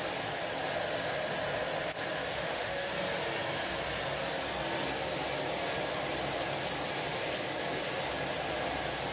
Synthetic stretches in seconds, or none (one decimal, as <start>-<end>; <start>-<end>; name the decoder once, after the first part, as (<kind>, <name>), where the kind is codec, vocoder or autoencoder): 2.3-2.9 (autoencoder, DAC-VAE)